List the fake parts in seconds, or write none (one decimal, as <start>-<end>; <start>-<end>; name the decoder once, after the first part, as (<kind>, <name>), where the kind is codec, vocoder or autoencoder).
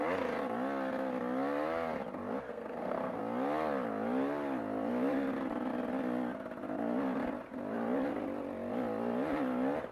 2.5-3.2 (codec, SNAC)